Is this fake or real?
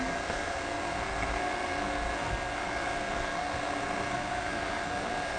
fake